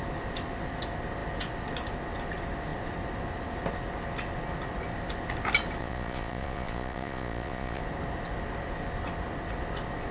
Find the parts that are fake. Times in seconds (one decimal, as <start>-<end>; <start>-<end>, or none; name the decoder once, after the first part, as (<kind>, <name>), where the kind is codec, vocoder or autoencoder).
5.8-7.8 (vocoder, Vocos)